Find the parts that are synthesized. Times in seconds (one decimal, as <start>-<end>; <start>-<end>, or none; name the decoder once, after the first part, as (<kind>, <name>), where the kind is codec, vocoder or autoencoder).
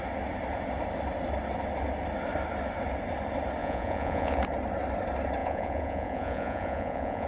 3.6-4.4 (vocoder, Vocos); 5.4-7.3